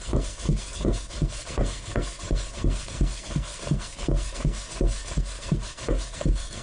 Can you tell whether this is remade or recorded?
remade